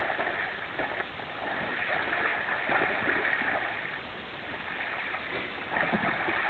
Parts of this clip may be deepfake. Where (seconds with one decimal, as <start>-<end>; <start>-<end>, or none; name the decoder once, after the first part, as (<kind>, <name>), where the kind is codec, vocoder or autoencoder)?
none